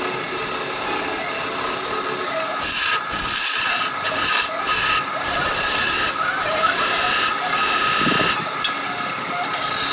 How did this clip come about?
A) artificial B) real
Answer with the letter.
B